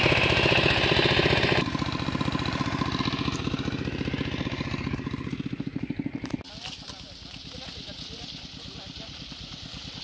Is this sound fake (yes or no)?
no